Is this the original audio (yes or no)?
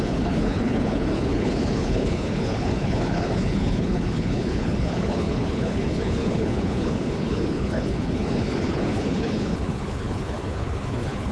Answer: no